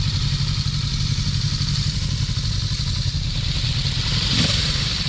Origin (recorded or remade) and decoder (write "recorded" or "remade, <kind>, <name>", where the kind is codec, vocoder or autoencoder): recorded